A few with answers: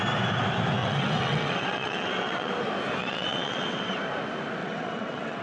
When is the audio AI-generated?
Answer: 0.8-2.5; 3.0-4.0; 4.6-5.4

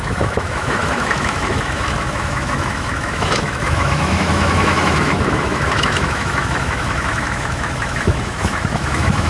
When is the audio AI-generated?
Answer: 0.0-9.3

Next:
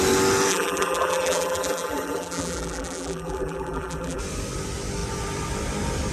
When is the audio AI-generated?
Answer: 0.5-4.2

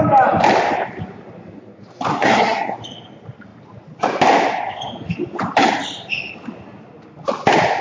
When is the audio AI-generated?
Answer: 2.1-2.7

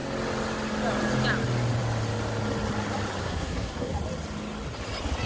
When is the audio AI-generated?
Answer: 3.2-3.9

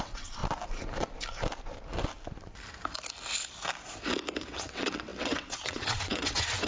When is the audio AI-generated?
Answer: 0.0-0.4; 4.4-6.7